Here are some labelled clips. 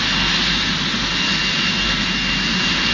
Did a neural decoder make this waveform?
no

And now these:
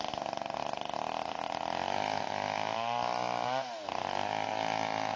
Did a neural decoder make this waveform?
no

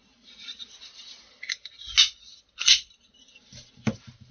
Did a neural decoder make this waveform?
no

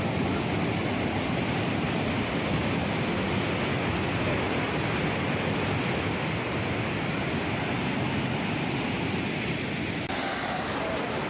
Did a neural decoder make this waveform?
no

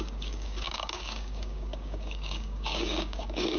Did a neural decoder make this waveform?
yes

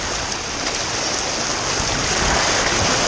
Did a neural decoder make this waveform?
no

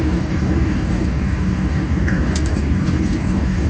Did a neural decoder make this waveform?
yes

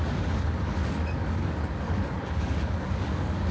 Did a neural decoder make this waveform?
yes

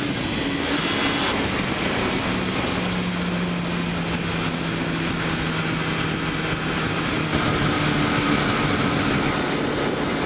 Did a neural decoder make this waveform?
no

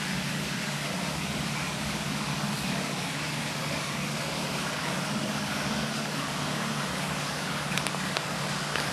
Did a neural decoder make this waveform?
yes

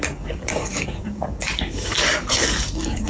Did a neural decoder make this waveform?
yes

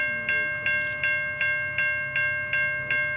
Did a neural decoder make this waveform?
no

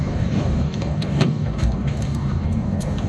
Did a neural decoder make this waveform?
yes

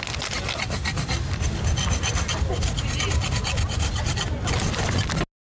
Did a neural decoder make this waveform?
no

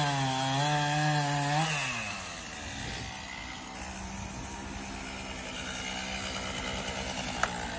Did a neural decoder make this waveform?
no